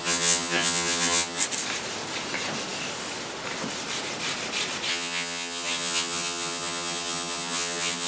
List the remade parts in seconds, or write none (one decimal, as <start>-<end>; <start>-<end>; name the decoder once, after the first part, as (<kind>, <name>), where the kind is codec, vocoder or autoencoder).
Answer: 0.0-1.4 (vocoder, HiFi-GAN); 4.9-8.1